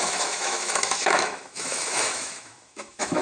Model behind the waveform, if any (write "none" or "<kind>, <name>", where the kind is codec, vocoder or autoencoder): autoencoder, DAC-VAE